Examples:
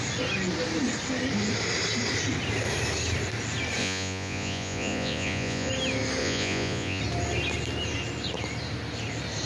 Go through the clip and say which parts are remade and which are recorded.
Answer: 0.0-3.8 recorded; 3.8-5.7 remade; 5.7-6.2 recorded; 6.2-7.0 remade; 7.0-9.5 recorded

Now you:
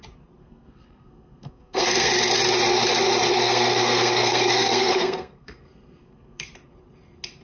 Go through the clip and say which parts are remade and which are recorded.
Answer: 0.0-0.4 recorded; 0.4-2.1 remade; 2.1-3.3 recorded; 3.3-6.5 remade; 6.5-7.4 recorded

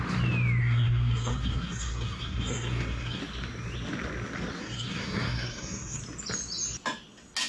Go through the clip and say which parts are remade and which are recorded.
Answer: 0.0-0.6 recorded; 0.6-3.2 remade; 3.2-4.6 recorded; 4.6-6.0 remade; 6.0-7.5 recorded

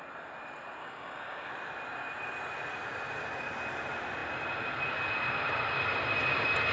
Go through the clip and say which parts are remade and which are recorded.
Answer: 0.0-0.8 recorded; 0.8-1.5 remade; 1.5-6.7 recorded

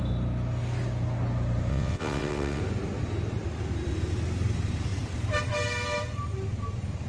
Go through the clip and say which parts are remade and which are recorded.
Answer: 0.0-1.7 recorded; 1.7-2.6 remade; 2.6-7.1 recorded

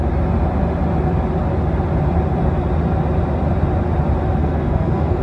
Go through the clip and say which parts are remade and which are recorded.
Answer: 0.0-4.4 recorded; 4.4-5.2 remade